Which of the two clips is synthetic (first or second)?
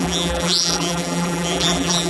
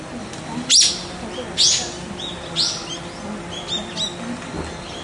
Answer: first